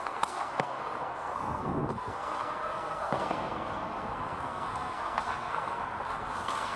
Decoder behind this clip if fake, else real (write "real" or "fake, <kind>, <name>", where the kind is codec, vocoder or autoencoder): fake, codec, SNAC